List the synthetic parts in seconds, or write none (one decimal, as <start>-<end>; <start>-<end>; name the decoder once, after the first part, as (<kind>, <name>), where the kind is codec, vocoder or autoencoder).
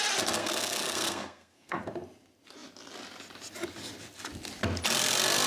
0.4-1.8 (codec, SNAC)